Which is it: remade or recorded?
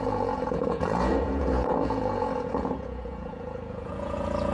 remade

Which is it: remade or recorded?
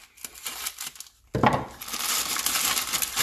recorded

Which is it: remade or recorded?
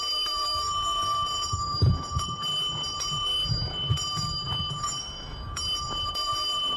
remade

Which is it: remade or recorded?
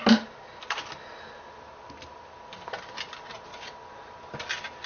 recorded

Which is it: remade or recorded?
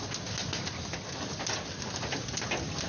recorded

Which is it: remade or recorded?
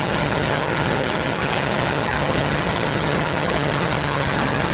remade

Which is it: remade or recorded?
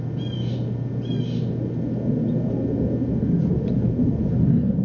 recorded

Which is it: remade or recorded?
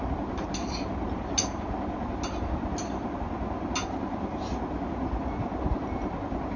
recorded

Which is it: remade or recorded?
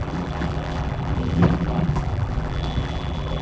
remade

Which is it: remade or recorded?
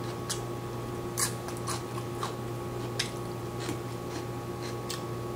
recorded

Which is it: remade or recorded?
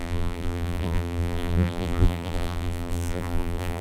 remade